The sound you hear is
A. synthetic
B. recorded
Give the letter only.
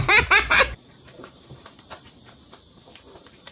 A